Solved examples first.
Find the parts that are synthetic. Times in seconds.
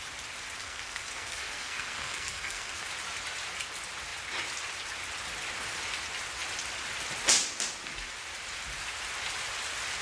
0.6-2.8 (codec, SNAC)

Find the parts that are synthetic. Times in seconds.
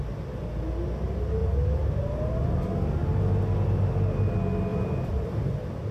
4.7-5.5 (vocoder, BigVGAN v2)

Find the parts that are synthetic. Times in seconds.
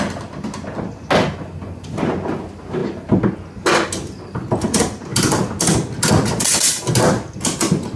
none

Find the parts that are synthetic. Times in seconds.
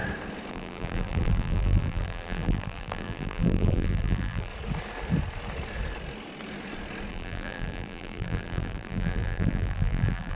0.5-4.5 (vocoder, BigVGAN v2); 7.1-10.3